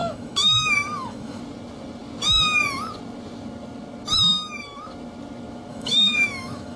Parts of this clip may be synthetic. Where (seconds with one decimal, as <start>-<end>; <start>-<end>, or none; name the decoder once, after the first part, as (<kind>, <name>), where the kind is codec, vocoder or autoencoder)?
0.0-1.4 (autoencoder, DAC-VAE); 5.7-6.8